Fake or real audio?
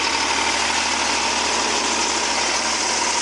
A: real